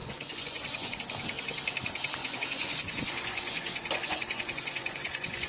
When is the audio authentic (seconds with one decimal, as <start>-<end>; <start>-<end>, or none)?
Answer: 1.0-2.2